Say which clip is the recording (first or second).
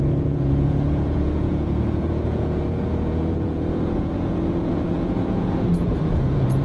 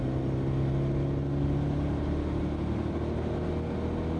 second